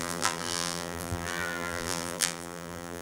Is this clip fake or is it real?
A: fake